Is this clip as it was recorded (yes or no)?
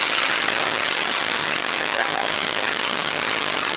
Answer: no